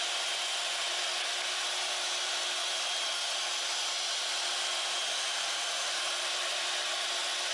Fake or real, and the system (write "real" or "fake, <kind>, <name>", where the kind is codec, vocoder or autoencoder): real